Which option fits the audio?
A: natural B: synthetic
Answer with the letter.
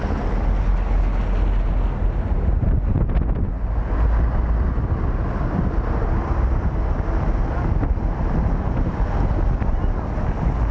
A